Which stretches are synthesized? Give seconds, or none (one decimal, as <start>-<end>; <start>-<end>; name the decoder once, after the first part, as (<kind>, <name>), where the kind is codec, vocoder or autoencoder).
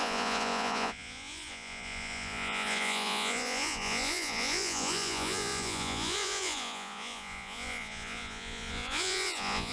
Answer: 0.0-9.7 (vocoder, Vocos)